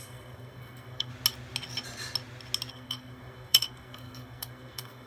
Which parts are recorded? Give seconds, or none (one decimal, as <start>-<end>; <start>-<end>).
1.1-2.7